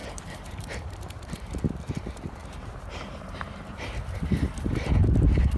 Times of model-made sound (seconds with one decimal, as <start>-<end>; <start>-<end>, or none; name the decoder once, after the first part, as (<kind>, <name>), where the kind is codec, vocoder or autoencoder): 0.0-1.3 (vocoder, BigVGAN v2); 2.4-4.9